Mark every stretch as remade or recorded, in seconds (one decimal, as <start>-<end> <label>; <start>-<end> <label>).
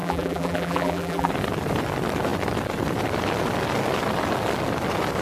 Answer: 0.0-1.3 remade; 1.3-5.2 recorded